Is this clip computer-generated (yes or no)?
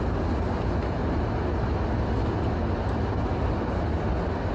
no